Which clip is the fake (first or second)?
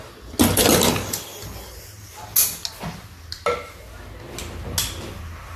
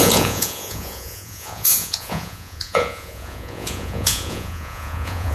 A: second